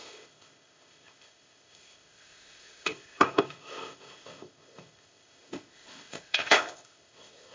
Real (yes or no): no